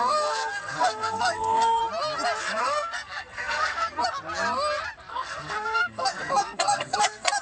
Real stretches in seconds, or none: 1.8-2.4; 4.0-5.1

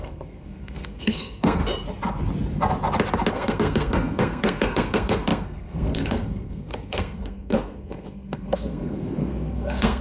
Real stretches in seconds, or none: 1.6-3.3

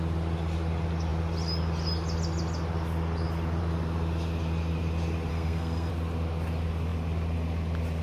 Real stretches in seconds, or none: 0.0-5.3; 5.9-8.0

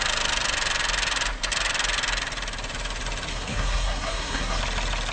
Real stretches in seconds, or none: 0.0-3.3; 4.6-5.1

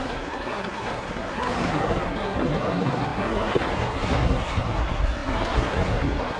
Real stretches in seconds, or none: none

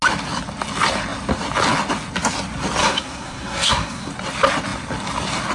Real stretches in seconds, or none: 0.0-2.8; 4.1-5.5

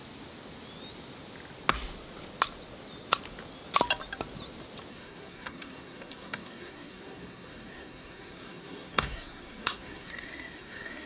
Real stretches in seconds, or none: 0.0-4.9

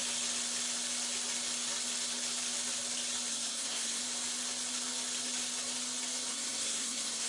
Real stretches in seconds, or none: 0.0-3.3; 4.0-6.3